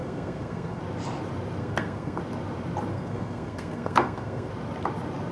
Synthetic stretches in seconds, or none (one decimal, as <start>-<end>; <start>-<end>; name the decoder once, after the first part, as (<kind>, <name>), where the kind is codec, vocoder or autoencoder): 0.0-0.8 (codec, SNAC); 1.6-2.2; 2.9-4.5